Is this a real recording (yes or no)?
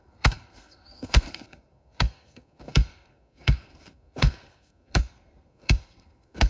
no